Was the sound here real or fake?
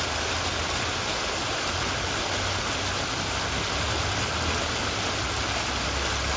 real